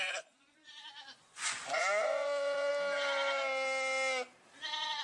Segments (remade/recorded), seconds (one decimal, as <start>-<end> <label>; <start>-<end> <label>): 0.0-2.7 remade; 2.7-4.6 recorded; 4.6-5.0 remade